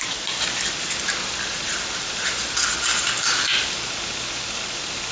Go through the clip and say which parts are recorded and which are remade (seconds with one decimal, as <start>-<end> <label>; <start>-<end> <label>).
0.0-1.2 recorded; 1.2-1.8 remade; 1.8-5.1 recorded